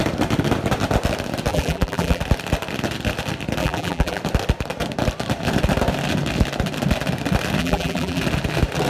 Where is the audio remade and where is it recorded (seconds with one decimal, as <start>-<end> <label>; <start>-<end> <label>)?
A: 0.0-1.5 recorded; 1.5-2.2 remade; 2.2-3.6 recorded; 3.6-4.2 remade; 4.2-7.6 recorded; 7.6-8.2 remade; 8.2-8.9 recorded